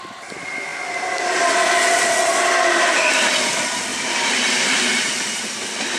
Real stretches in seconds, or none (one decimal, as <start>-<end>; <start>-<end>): 0.0-6.0